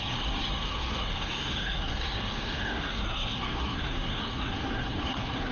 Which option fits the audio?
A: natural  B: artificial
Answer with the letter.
B